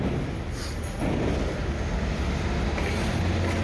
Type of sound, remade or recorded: recorded